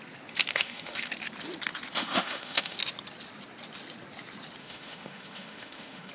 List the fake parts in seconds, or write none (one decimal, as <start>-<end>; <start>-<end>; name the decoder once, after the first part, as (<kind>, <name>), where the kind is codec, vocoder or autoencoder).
0.5-1.1 (autoencoder, DAC-VAE); 2.0-2.8; 4.6-6.1